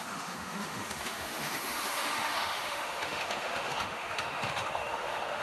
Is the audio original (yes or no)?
no